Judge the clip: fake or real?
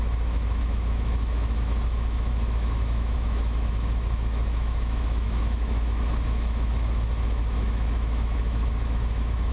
fake